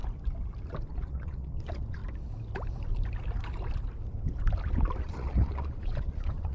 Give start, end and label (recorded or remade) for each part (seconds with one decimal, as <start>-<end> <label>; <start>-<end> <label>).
0.0-0.9 recorded; 0.9-2.0 remade; 2.0-5.0 recorded; 5.0-6.5 remade